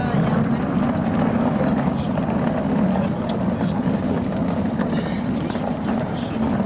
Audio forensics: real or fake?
real